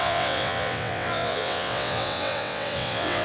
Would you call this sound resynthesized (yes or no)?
yes